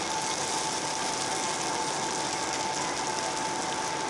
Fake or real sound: real